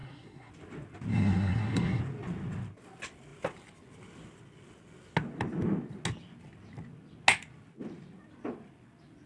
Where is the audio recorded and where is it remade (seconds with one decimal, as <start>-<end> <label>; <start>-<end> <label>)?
0.0-0.5 remade; 0.5-1.1 recorded; 1.1-2.0 remade; 2.0-9.3 recorded